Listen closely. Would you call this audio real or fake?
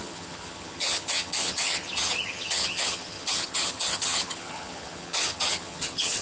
fake